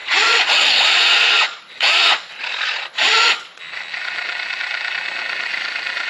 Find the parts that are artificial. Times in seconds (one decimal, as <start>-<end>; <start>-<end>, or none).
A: 0.0-3.6